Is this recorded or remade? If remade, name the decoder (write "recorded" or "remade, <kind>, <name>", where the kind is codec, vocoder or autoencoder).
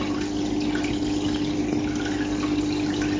recorded